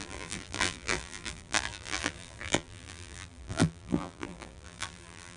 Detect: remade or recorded remade